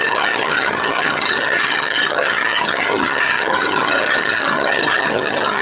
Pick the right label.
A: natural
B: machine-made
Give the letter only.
B